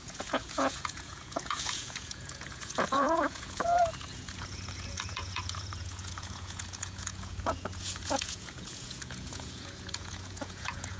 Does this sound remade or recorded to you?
remade